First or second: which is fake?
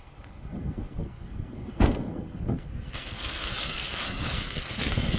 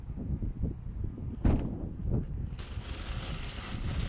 first